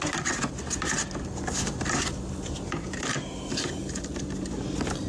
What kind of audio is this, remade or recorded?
recorded